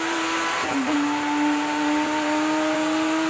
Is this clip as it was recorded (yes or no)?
no